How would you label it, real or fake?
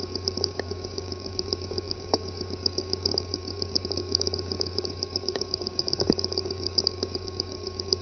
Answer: fake